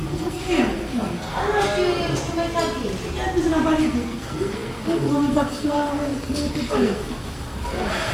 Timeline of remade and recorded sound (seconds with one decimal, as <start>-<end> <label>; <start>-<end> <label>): 0.0-1.4 remade; 1.4-3.8 recorded; 3.8-8.1 remade

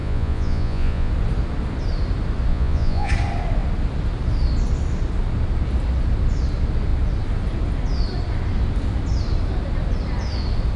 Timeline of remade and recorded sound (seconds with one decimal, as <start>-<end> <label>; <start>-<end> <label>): 0.0-1.1 remade; 1.1-2.5 recorded; 2.5-3.1 remade; 3.1-10.8 recorded

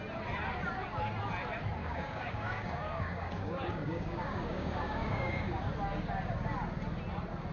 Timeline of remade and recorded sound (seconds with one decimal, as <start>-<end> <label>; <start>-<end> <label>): 0.0-1.8 recorded; 1.8-5.6 remade; 5.6-7.5 recorded

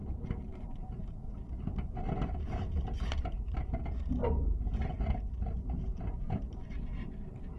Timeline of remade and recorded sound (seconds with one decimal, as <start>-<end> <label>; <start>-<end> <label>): 0.0-0.5 recorded; 0.5-3.7 remade; 3.7-4.2 recorded; 4.2-7.6 remade

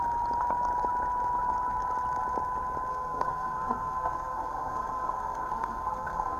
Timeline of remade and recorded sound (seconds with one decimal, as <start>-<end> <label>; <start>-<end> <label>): 0.0-2.9 recorded; 2.9-6.4 remade